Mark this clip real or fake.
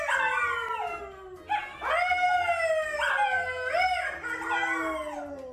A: real